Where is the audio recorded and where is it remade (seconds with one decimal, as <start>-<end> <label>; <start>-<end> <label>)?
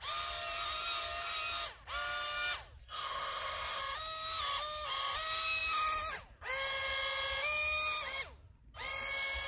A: 0.0-2.8 recorded; 2.8-3.8 remade; 3.8-9.5 recorded